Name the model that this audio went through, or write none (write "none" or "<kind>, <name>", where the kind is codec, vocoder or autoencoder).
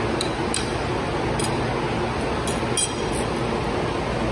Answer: none